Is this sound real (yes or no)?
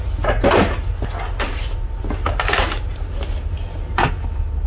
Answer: yes